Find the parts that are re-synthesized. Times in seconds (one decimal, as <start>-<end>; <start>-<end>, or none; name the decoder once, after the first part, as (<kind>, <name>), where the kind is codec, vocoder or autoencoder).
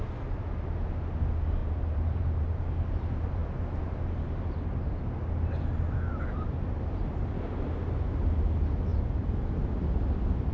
1.6-2.9 (vocoder, BigVGAN v2); 8.9-9.4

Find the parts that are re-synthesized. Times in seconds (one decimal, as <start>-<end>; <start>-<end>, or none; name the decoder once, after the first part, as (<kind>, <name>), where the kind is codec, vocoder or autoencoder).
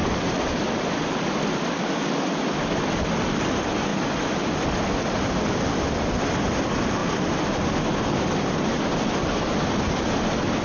0.0-2.8 (vocoder, BigVGAN v2); 7.0-7.8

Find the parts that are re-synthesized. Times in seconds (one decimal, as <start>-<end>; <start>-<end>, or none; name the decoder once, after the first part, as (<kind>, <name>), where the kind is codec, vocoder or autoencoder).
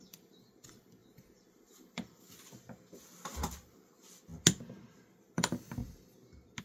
0.0-4.3 (vocoder, BigVGAN v2); 5.2-5.8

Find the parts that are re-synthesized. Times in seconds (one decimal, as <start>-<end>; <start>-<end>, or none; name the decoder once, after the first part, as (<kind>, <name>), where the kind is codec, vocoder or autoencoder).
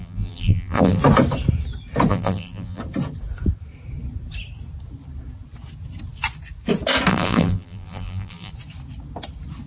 0.0-1.0 (vocoder, BigVGAN v2); 2.1-2.8; 7.1-8.5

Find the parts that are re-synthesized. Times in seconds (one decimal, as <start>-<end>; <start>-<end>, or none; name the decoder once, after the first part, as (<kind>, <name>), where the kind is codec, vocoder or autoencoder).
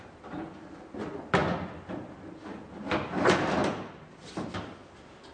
0.0-1.4 (vocoder, BigVGAN v2); 3.2-3.6; 4.5-5.3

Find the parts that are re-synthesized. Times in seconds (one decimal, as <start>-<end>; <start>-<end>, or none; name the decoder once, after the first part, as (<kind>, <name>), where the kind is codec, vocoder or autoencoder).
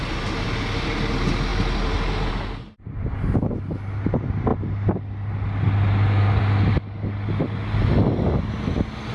none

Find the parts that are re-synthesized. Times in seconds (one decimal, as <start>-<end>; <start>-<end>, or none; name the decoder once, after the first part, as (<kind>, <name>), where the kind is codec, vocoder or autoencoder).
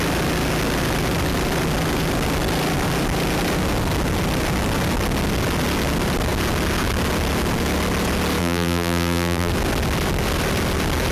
8.4-9.5 (vocoder, BigVGAN v2)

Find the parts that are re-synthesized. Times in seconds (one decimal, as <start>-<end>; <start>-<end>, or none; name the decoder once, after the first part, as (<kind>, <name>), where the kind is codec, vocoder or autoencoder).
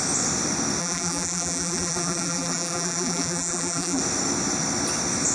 0.8-4.0 (vocoder, BigVGAN v2)